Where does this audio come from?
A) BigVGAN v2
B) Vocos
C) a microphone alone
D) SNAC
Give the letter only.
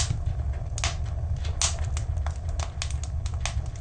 C